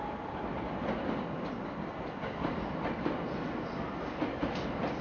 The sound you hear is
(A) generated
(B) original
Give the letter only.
B